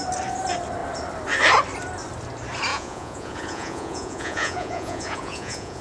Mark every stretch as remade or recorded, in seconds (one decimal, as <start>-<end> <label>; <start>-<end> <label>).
0.0-2.7 recorded; 2.7-5.8 remade